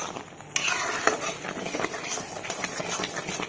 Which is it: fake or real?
real